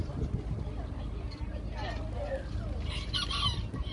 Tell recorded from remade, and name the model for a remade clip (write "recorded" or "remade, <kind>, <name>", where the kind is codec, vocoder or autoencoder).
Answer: recorded